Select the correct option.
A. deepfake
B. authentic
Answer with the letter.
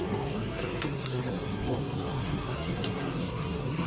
A